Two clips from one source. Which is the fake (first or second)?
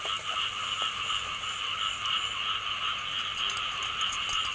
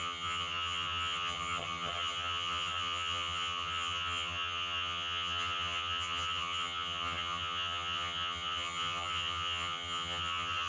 second